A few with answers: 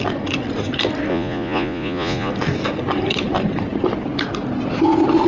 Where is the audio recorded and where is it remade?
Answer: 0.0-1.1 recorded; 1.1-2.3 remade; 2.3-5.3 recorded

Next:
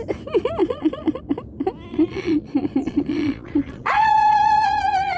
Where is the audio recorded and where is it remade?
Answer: 0.0-0.6 recorded; 0.6-1.2 remade; 1.2-1.9 recorded; 1.9-5.2 remade

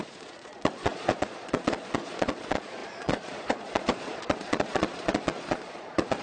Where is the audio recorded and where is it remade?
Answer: 0.0-6.2 remade

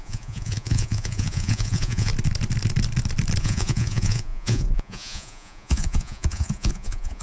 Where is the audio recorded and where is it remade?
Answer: 0.0-2.1 remade; 2.1-3.4 recorded; 3.4-7.2 remade

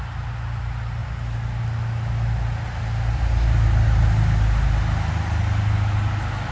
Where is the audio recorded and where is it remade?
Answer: 0.0-6.5 recorded

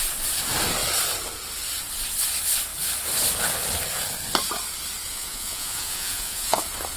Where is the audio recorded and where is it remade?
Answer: 0.0-5.1 recorded; 5.1-6.6 remade; 6.6-7.0 recorded

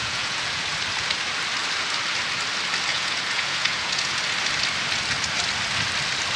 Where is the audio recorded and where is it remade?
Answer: 0.0-0.6 remade; 0.6-2.9 recorded; 2.9-4.2 remade; 4.2-6.4 recorded

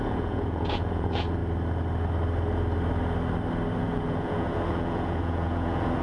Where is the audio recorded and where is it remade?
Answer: 0.0-1.4 remade; 1.4-3.8 recorded; 3.8-6.0 remade